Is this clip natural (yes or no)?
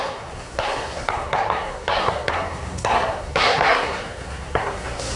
no